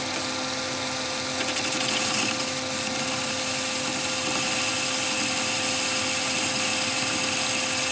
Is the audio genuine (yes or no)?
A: yes